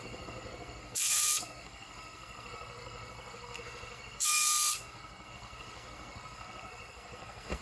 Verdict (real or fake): fake